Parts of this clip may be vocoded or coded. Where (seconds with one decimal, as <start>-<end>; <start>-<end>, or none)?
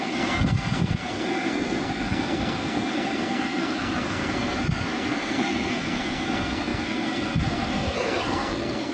0.0-8.9